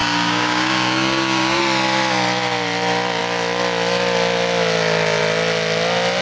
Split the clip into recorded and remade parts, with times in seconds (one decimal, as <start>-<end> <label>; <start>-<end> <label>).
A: 0.0-1.6 remade; 1.6-6.2 recorded